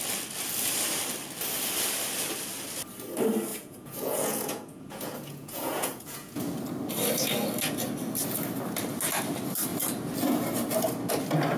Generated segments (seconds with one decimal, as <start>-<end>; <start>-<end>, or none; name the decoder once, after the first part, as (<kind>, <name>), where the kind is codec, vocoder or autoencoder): 3.5-6.4 (vocoder, Vocos)